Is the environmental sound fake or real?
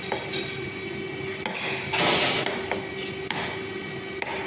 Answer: real